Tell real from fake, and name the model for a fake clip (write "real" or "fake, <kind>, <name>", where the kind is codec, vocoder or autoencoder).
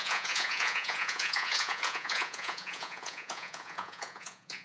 fake, vocoder, Vocos